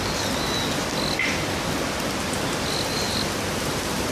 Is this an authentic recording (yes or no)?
yes